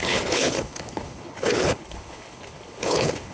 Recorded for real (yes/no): no